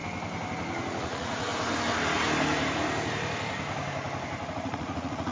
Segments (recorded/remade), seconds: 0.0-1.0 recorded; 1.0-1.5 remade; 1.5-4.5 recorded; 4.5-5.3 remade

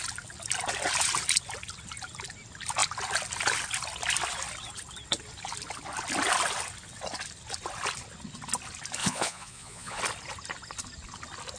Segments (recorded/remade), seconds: 0.0-9.0 recorded; 9.0-10.0 remade; 10.0-11.6 recorded

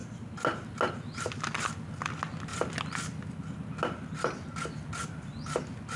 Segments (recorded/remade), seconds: 0.0-6.0 recorded

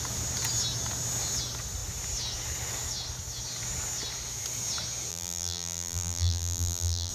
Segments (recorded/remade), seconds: 0.0-5.1 recorded; 5.1-7.1 remade

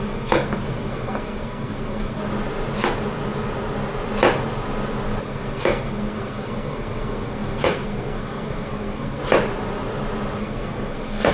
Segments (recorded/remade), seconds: 0.0-2.2 remade; 2.2-5.2 recorded; 5.2-9.2 remade; 9.2-10.4 recorded; 10.4-11.3 remade

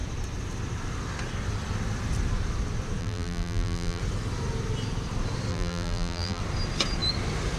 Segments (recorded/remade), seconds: 0.0-3.0 recorded; 3.0-4.0 remade; 4.0-5.5 recorded; 5.5-6.4 remade; 6.4-7.6 recorded

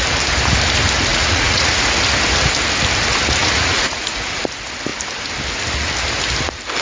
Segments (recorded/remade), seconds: 0.0-1.1 recorded; 1.1-1.9 remade; 1.9-3.4 recorded; 3.4-4.4 remade; 4.4-6.8 recorded